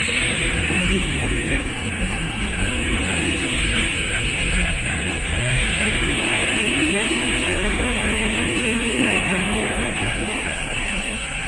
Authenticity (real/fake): fake